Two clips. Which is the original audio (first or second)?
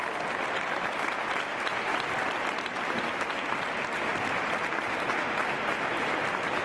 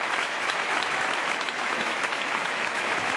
first